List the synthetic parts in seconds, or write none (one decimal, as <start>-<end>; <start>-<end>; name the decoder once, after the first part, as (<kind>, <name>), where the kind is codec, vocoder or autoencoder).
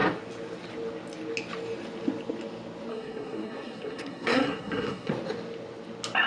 2.9-5.1 (codec, SNAC)